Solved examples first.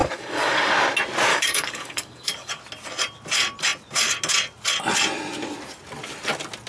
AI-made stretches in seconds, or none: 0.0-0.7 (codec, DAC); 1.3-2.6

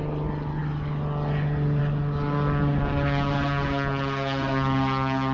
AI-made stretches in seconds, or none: none

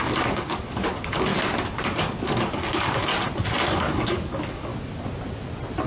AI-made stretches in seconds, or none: 0.0-1.3 (codec, DAC); 2.0-3.1; 3.7-4.7

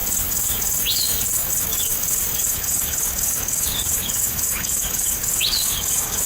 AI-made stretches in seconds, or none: 0.0-6.3 (codec, DAC)